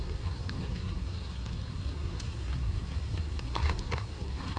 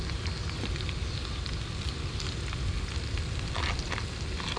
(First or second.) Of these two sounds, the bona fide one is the second